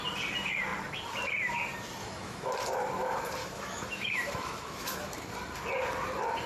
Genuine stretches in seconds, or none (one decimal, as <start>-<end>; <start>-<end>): 0.0-2.0; 2.5-3.4; 5.3-6.5

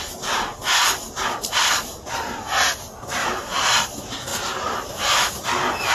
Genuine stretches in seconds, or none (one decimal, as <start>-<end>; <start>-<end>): 0.0-3.2; 3.8-4.3; 5.3-5.9

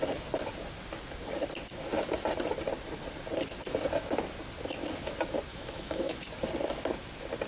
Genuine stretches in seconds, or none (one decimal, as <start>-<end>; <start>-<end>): 0.0-5.5; 6.2-7.5

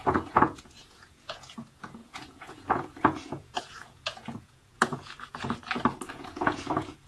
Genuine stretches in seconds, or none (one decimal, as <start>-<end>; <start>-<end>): 5.6-6.1

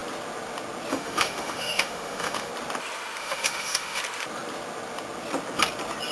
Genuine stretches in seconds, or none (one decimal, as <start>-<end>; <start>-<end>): 0.0-0.9; 2.5-3.2; 4.0-6.1

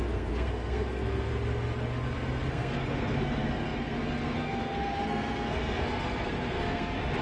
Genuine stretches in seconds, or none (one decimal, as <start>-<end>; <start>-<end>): 1.3-2.5

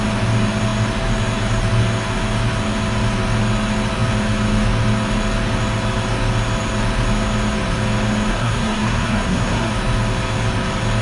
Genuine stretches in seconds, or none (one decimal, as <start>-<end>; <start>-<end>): 0.0-8.3; 9.7-11.0

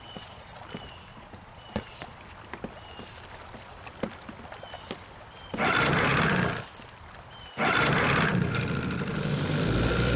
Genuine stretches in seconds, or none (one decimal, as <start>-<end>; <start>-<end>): 0.6-1.1; 2.2-10.2